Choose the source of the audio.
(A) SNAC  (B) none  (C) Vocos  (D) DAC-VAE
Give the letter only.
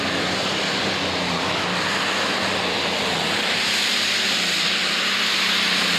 B